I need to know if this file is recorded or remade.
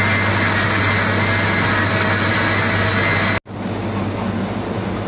recorded